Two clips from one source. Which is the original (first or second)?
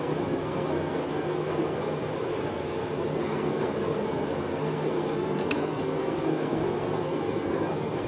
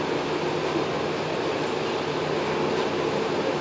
second